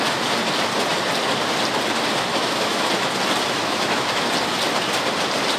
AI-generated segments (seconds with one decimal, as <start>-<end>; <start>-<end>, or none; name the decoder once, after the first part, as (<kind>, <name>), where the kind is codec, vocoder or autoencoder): 2.3-2.9 (autoencoder, DAC-VAE); 3.6-4.3